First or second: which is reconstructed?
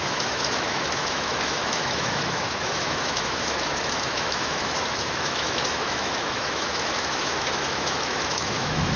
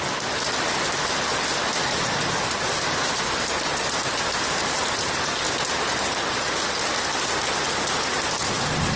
first